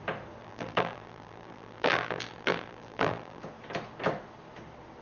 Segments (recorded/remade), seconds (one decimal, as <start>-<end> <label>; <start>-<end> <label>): 0.0-0.4 recorded; 0.4-3.4 remade; 3.4-5.0 recorded